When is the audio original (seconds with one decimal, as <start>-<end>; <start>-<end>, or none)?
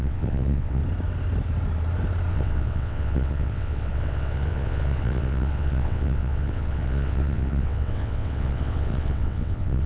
0.8-2.3